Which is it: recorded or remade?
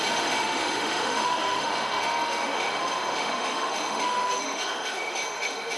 remade